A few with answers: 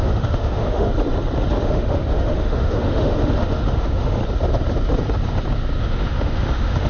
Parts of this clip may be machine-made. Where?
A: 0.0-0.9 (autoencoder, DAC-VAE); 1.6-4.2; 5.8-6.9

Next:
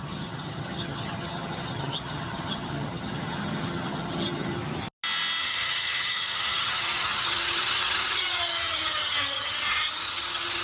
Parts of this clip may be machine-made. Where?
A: 0.0-4.6 (vocoder, HiFi-GAN); 5.4-10.6

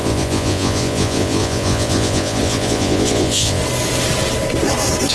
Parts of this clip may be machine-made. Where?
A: 0.0-3.6 (vocoder, Vocos)

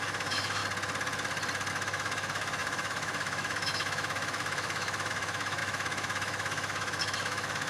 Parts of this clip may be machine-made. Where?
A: 0.0-0.6 (autoencoder, DAC-VAE); 1.7-7.7

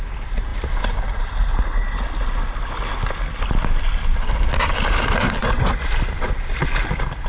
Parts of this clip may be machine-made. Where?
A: none

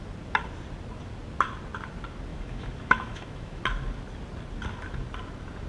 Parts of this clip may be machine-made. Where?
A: 2.3-3.6 (autoencoder, DAC-VAE)

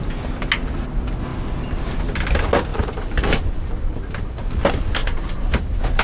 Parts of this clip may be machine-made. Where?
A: 2.7-4.6 (vocoder, BigVGAN v2); 5.0-5.6

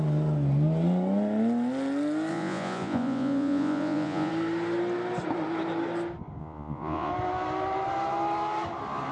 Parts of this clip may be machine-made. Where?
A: 2.3-4.3 (vocoder, Vocos); 6.4-7.1